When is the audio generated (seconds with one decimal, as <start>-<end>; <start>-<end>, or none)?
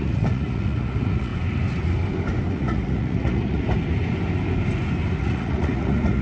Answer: 0.0-1.3; 2.5-3.6; 5.2-6.2